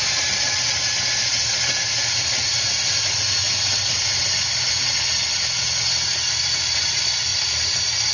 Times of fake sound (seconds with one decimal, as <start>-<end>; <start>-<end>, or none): none

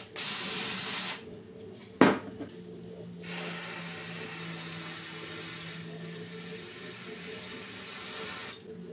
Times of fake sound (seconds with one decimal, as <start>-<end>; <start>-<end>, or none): 0.0-1.8; 6.5-8.4